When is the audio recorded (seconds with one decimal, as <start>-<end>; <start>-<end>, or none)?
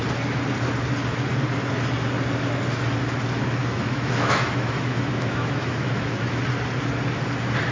0.0-3.6; 6.4-7.7